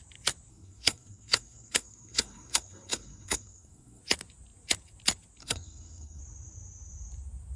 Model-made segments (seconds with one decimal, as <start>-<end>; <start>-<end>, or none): 0.5-4.0; 5.4-6.2